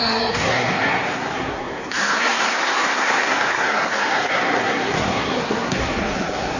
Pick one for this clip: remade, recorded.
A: remade